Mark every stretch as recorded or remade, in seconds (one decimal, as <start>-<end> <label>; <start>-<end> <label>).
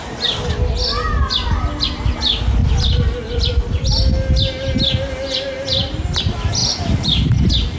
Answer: 0.0-2.6 recorded; 2.6-3.5 remade; 3.5-6.6 recorded; 6.6-7.8 remade